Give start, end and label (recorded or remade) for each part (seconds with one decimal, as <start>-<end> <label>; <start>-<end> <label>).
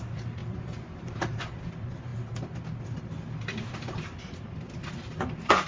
0.0-2.1 remade; 2.1-4.2 recorded; 4.2-5.7 remade